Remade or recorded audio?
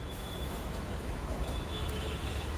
remade